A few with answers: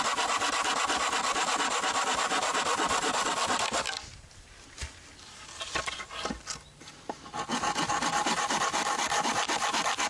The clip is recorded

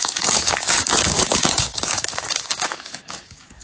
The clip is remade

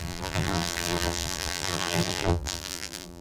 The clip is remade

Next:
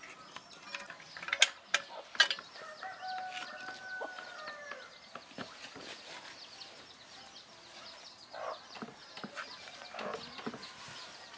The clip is recorded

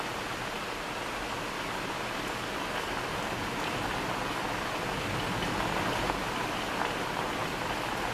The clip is recorded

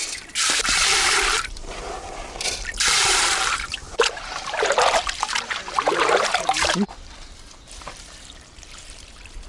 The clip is remade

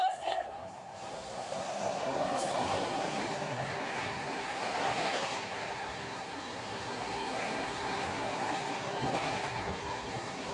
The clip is remade